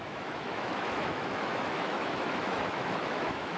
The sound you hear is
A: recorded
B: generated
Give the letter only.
B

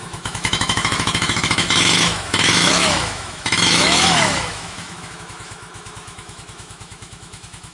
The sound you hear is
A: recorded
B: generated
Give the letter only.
B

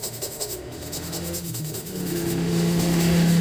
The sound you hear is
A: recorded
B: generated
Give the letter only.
B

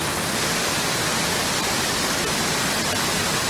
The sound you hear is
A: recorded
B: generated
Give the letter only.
A